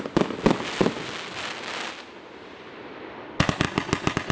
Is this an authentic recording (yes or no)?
yes